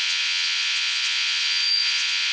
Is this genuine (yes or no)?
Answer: no